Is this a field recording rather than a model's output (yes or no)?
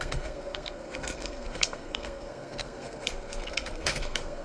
no